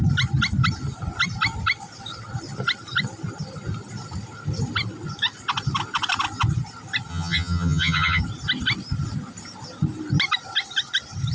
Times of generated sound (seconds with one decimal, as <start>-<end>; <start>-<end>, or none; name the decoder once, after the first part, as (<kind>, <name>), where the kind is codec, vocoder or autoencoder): 7.1-8.2 (vocoder, HiFi-GAN)